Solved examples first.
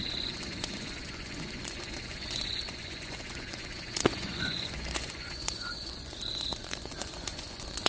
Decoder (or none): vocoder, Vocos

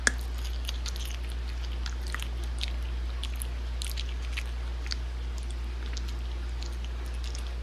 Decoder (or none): none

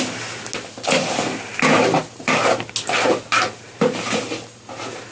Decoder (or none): none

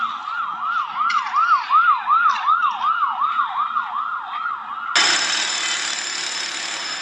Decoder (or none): none